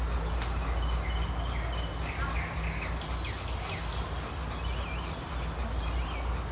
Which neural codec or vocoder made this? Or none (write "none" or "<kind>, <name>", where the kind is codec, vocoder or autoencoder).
none